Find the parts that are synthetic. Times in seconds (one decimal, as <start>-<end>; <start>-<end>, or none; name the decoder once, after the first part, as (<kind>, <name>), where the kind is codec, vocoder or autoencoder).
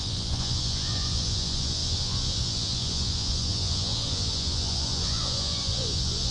0.0-6.3 (vocoder, Vocos)